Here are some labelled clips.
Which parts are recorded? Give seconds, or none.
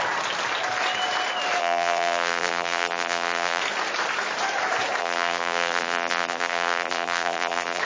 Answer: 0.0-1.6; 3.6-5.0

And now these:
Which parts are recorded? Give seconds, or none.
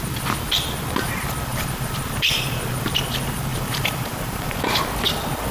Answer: 0.0-1.5; 2.9-3.5; 4.6-5.5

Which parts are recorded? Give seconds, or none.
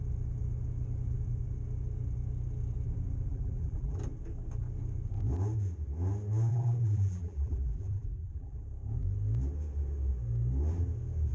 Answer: 0.0-3.3; 4.0-6.5; 8.6-11.3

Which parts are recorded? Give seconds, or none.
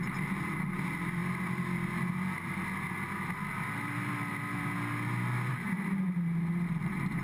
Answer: 0.0-7.2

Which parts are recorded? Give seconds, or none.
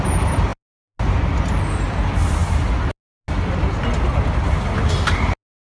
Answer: 0.0-5.7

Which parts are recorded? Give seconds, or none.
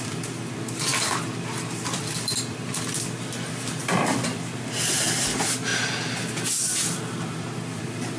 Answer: none